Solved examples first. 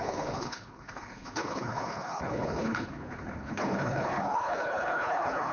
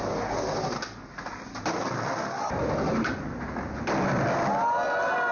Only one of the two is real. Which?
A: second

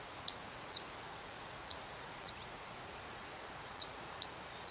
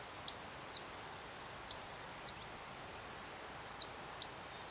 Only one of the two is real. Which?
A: second